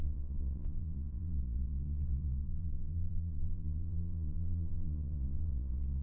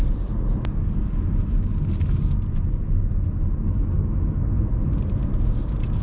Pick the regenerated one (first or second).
first